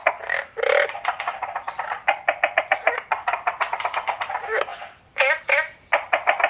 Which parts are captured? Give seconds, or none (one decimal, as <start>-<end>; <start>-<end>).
0.0-6.5